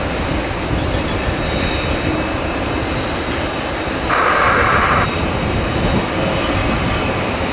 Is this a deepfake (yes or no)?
no